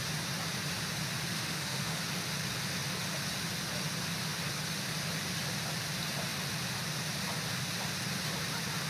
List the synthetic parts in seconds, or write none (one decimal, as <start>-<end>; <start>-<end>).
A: 1.3-2.0